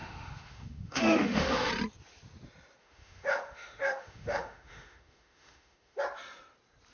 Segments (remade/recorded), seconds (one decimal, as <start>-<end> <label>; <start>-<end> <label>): 0.0-1.7 remade; 1.7-2.8 recorded; 2.8-6.0 remade; 6.0-6.9 recorded